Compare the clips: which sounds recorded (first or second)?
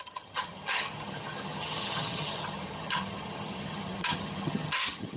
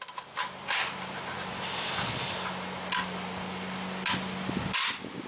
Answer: second